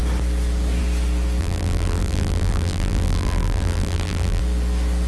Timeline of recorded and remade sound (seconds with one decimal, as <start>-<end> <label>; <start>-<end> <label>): 0.0-1.4 recorded; 1.4-4.4 remade; 4.4-5.1 recorded